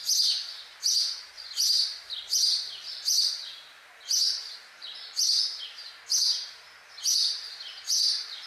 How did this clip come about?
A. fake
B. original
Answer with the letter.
B